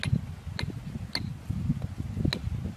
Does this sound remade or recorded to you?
recorded